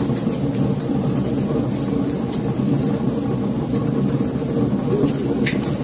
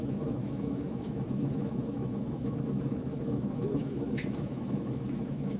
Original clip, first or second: first